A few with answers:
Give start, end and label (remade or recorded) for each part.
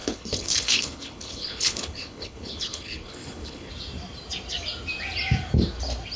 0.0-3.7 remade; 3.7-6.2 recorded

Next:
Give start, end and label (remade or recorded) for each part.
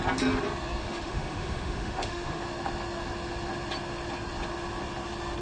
0.0-0.8 recorded; 0.8-2.4 remade; 2.4-5.4 recorded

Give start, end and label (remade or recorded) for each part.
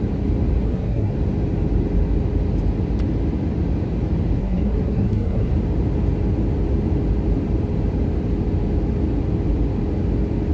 0.0-0.6 recorded; 0.6-1.1 remade; 1.1-4.4 recorded; 4.4-5.5 remade; 5.5-10.5 recorded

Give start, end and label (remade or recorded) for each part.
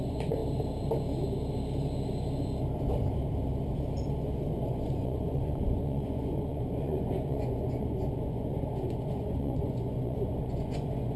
0.0-0.4 remade; 0.4-4.4 recorded; 4.4-11.2 remade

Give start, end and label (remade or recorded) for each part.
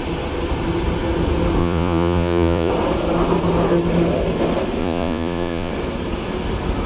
0.0-1.6 recorded; 1.6-2.7 remade; 2.7-4.8 recorded; 4.8-5.7 remade; 5.7-6.9 recorded